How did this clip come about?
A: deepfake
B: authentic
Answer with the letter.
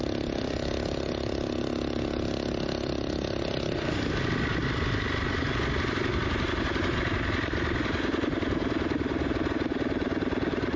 B